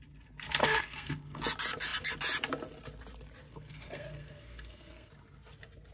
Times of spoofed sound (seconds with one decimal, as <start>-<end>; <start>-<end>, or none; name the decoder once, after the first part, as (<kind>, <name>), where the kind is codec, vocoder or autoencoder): 0.6-1.4 (codec, SNAC); 3.5-5.1

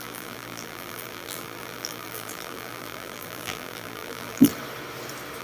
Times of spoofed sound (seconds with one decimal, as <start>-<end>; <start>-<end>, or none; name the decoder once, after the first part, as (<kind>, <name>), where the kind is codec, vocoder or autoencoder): 0.0-4.5 (vocoder, BigVGAN v2)

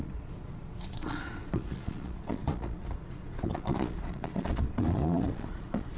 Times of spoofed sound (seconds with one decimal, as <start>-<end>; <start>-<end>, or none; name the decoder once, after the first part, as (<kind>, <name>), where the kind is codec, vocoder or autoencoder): 0.0-6.0 (vocoder, Vocos)

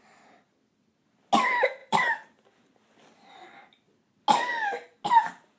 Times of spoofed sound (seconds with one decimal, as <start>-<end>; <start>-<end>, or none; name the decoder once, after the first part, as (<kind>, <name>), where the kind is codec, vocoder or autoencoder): 1.8-2.5 (vocoder, BigVGAN v2)